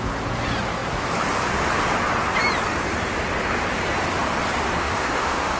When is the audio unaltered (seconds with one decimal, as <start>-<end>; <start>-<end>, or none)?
0.0-4.8